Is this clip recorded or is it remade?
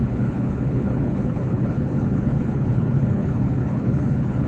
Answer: remade